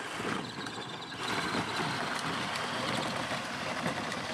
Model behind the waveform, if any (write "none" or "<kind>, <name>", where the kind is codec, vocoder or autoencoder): none